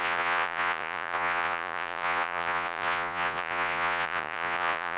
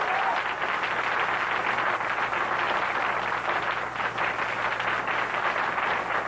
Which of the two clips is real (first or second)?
second